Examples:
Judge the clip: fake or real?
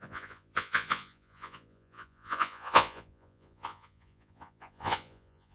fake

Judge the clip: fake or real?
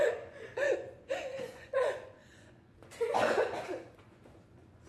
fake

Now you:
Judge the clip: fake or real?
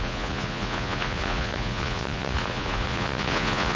fake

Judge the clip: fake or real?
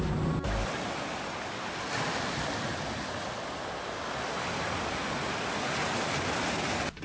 real